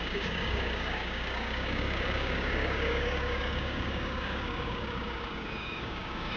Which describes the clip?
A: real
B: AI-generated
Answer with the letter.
B